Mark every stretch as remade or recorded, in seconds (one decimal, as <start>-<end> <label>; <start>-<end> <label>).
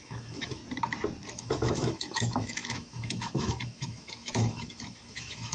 0.0-0.6 remade; 0.6-1.3 recorded; 1.3-5.5 remade